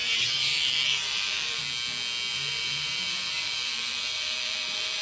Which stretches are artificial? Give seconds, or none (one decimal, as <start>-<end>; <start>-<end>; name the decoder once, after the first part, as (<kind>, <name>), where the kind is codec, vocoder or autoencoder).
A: 0.0-1.6 (vocoder, BigVGAN v2); 2.3-5.0